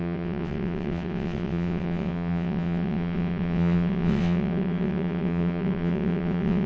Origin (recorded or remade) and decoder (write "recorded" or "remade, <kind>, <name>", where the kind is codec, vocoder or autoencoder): remade, vocoder, WaveNeXt